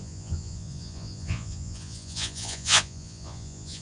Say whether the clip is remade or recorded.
remade